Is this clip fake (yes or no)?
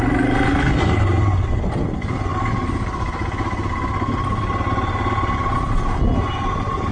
no